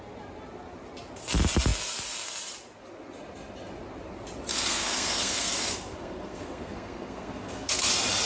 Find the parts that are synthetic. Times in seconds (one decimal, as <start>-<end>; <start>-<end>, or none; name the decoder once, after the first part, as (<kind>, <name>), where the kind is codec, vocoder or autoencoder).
4.5-7.9 (codec, SNAC)